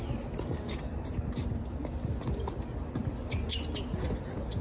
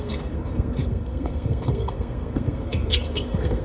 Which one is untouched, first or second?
first